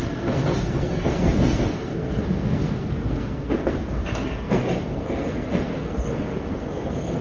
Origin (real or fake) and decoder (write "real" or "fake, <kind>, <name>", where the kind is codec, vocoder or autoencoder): fake, codec, SNAC